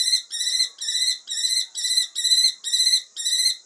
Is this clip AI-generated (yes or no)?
no